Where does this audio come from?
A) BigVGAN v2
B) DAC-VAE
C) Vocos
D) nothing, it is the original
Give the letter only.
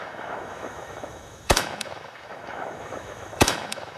B